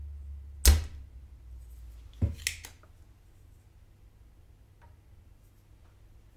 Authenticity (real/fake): real